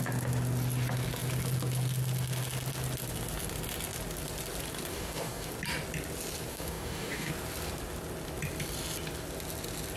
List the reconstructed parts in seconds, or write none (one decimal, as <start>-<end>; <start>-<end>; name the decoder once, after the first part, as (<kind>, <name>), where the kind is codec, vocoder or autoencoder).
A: 4.9-5.5 (codec, DAC); 6.5-7.3